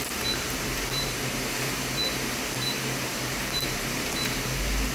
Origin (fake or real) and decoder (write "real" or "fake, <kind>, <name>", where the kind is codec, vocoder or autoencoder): fake, vocoder, BigVGAN v2